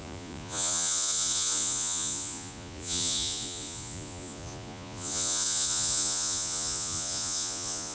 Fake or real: fake